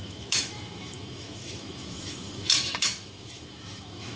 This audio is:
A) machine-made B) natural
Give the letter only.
A